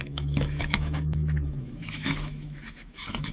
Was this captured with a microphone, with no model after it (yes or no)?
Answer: no